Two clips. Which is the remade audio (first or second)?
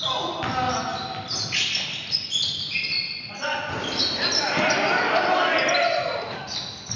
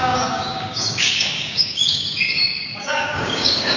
second